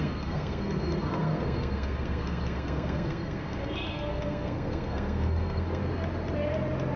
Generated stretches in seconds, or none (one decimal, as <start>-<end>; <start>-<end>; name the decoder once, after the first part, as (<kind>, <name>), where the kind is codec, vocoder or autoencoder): 0.0-5.8 (codec, SNAC)